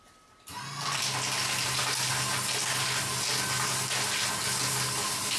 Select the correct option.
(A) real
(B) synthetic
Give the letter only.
A